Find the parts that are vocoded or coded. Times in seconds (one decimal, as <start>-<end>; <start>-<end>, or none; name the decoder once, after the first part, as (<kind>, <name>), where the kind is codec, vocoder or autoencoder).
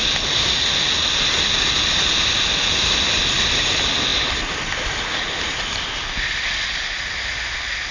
none